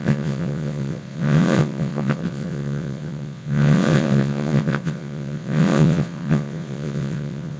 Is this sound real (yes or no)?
no